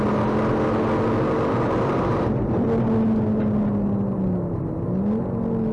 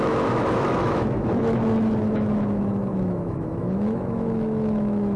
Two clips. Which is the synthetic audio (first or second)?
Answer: second